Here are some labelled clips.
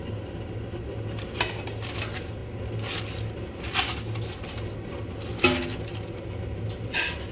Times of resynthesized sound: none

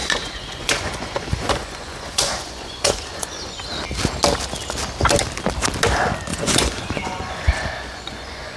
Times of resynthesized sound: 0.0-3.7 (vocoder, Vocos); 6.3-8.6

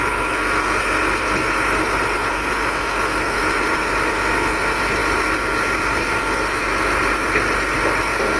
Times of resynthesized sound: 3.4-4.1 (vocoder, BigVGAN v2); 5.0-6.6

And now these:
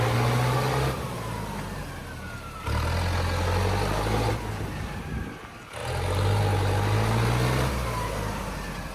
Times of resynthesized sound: none

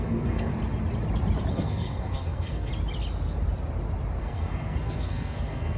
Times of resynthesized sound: 0.0-0.5 (codec, SNAC); 1.5-2.7; 4.2-5.8

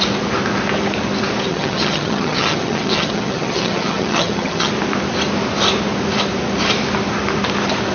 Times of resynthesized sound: 1.5-4.7 (vocoder, HiFi-GAN)